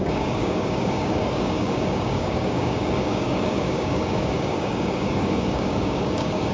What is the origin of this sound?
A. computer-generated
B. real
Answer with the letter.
A